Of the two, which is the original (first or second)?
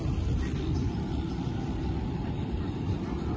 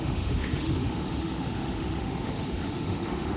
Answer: first